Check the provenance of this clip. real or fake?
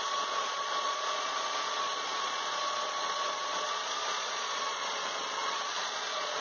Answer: fake